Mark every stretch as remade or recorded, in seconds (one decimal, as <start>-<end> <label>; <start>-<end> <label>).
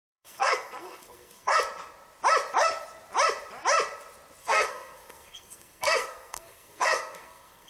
0.0-1.6 remade; 1.6-4.4 recorded; 4.4-7.7 remade